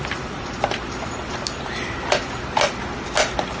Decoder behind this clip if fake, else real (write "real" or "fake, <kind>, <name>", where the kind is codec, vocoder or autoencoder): real